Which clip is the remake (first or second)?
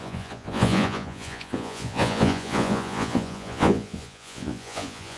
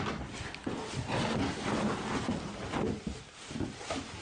first